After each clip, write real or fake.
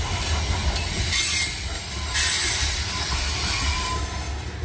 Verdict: real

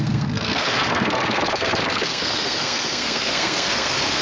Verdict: fake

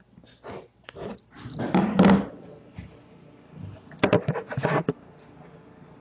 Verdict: real